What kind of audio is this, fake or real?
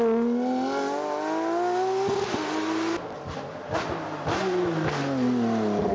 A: real